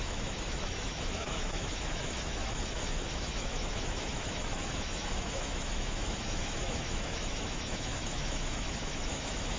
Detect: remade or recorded remade